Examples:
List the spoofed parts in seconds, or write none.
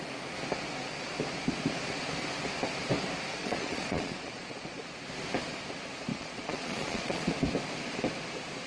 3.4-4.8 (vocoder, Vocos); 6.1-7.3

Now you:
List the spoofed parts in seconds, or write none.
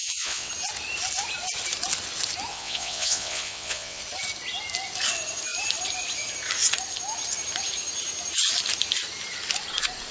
0.0-0.5 (vocoder, WaveNeXt); 2.5-4.0